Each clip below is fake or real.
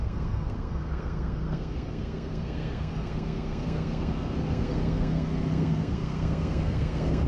fake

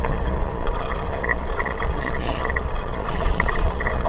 fake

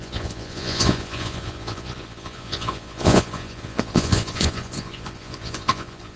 fake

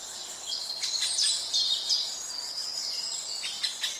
real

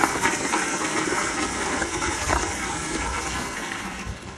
fake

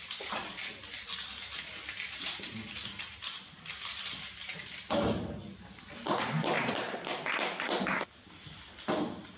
real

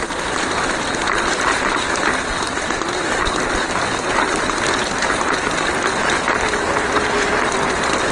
real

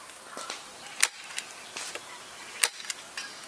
real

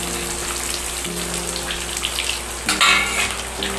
real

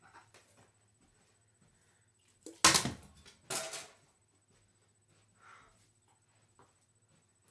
real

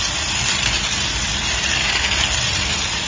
real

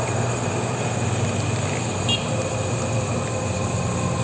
real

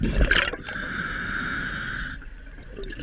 real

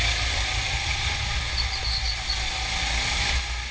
real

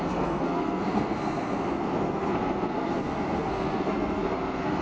fake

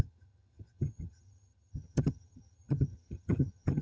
fake